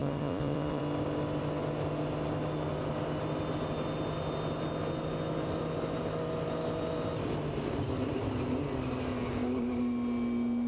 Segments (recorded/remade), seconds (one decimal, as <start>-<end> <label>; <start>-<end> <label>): 0.0-0.8 remade; 0.8-10.7 recorded